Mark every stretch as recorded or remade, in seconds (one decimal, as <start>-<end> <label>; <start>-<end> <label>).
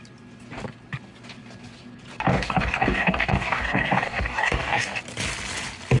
0.0-2.3 recorded; 2.3-5.0 remade; 5.0-6.0 recorded